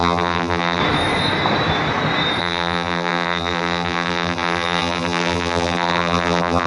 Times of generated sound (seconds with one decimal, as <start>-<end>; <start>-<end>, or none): 0.0-0.8; 2.4-6.7